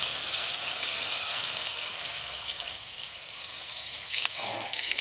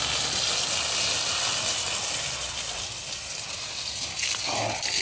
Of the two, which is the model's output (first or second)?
first